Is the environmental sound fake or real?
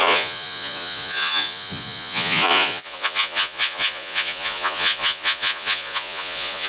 fake